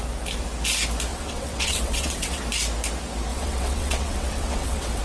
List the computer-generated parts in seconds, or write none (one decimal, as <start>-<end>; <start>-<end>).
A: 1.1-2.4; 3.3-5.0